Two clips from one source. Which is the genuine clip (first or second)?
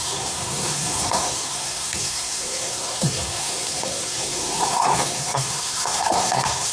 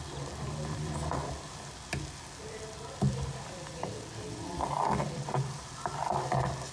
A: second